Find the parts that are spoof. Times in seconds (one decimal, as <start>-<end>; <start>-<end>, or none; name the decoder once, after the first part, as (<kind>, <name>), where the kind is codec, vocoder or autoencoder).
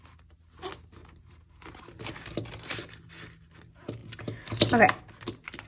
none